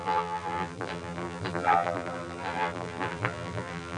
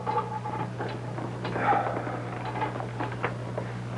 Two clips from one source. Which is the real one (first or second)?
second